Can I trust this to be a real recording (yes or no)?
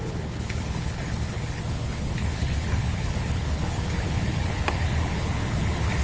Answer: no